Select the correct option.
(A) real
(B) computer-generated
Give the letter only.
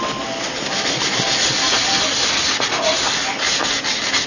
A